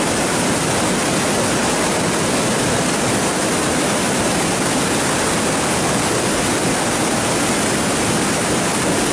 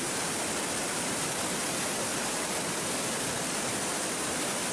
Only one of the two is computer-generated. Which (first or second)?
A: second